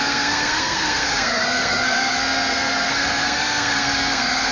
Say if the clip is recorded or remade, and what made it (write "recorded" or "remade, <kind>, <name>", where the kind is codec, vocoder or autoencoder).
remade, codec, SNAC